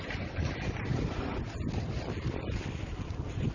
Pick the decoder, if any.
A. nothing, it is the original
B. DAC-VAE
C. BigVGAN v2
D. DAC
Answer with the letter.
A